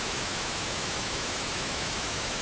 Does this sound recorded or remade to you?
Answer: remade